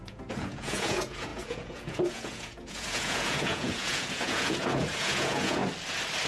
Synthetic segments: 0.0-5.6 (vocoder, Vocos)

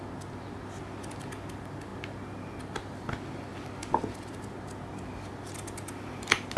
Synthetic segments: none

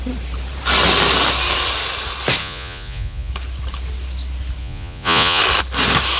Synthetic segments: 2.4-3.3 (vocoder, Vocos); 4.6-5.4

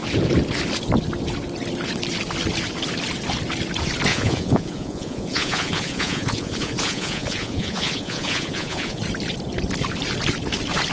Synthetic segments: 4.1-9.0 (vocoder, Vocos)

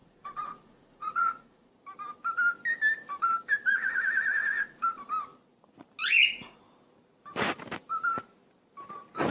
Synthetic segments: 0.0-1.7 (vocoder, Vocos); 3.7-5.0; 6.0-6.6

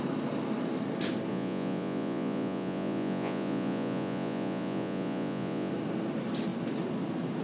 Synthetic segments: 1.3-5.7 (vocoder, Vocos)